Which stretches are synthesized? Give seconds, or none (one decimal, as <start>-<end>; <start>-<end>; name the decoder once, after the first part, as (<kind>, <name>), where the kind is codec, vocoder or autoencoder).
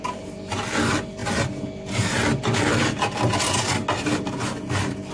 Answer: none